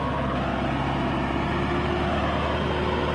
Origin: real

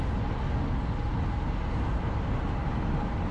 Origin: real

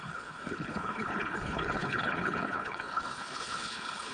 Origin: fake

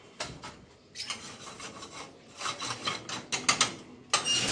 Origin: real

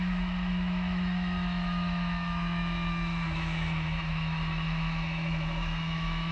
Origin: fake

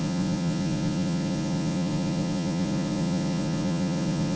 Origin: fake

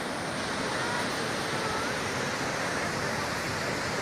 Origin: real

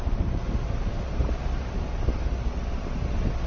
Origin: real